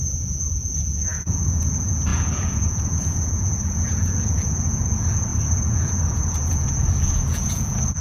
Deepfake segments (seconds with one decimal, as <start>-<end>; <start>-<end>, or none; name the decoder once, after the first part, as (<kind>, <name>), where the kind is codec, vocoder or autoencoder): 0.0-8.0 (vocoder, Vocos)